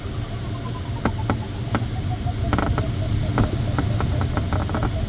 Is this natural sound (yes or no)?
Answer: yes